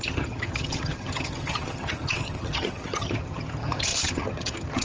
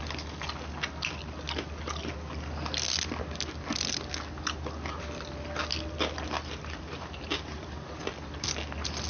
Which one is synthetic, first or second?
first